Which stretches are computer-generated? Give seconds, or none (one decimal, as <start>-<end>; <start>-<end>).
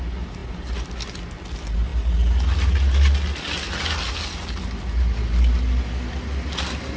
none